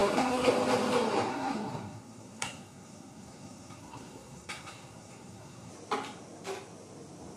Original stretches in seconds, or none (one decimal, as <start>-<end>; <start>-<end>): 0.5-1.3; 5.7-7.4